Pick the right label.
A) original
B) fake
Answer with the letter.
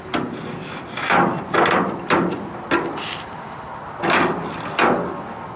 A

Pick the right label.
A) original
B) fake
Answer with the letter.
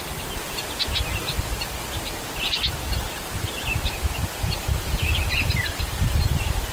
A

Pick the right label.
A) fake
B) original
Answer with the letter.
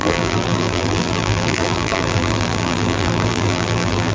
A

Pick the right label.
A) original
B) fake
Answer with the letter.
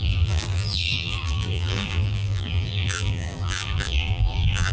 B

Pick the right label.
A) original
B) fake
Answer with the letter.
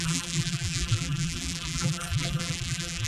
B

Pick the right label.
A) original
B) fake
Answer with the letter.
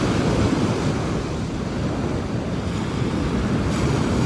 A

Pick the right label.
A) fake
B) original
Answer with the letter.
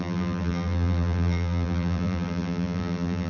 A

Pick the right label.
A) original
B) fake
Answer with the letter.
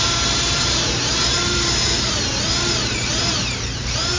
B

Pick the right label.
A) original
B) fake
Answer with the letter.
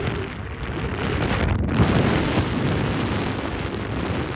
B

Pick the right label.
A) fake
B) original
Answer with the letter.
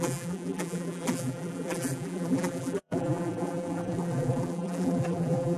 A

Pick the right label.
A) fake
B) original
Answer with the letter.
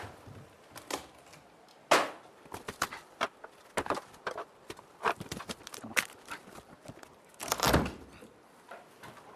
B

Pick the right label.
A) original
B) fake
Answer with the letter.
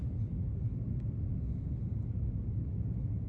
A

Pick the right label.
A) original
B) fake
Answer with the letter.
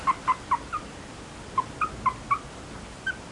A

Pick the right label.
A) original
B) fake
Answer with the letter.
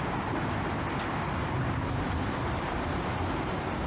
A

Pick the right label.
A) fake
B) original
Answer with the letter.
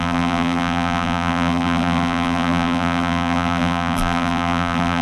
A